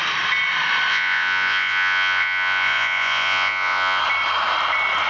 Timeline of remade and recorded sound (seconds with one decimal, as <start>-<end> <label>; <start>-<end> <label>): 0.0-0.9 recorded; 0.9-4.0 remade; 4.0-5.1 recorded